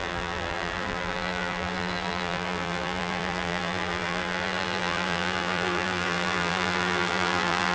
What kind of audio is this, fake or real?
fake